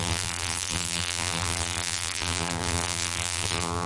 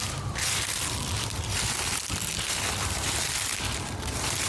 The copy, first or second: first